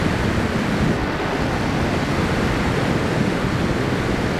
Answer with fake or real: real